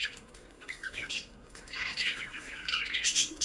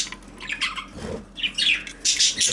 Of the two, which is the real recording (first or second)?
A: second